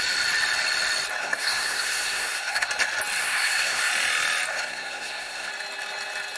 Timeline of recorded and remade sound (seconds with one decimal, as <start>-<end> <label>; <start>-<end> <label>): 0.0-1.2 recorded; 1.2-2.7 remade; 2.7-3.2 recorded; 3.2-3.9 remade; 3.9-4.5 recorded; 4.5-5.5 remade; 5.5-6.4 recorded